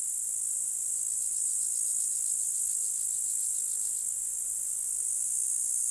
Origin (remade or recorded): recorded